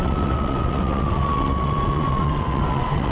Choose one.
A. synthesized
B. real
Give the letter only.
A